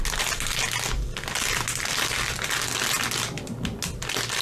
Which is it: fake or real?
real